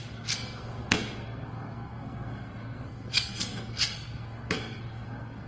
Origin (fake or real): fake